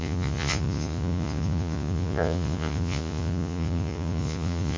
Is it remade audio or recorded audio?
remade